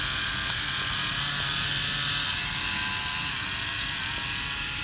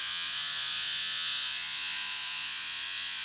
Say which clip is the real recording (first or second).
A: first